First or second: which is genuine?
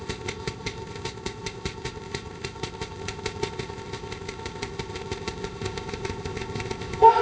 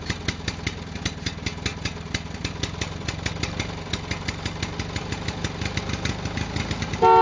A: second